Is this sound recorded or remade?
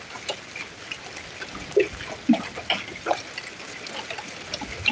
recorded